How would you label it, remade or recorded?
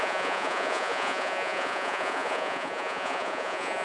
remade